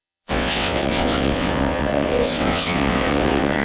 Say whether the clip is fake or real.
fake